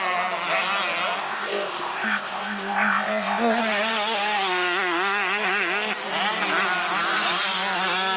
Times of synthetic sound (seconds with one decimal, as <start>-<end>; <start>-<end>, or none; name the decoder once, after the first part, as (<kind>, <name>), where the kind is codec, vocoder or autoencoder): 1.2-3.6 (codec, ZipCodec)